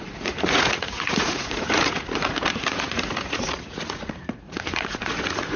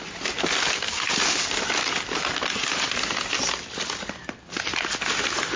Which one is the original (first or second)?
second